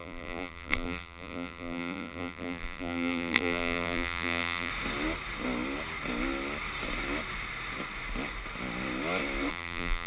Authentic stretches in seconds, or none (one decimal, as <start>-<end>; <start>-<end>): 4.7-9.5